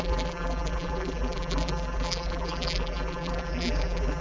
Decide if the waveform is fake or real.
fake